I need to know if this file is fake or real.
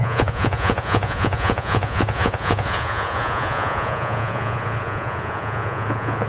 fake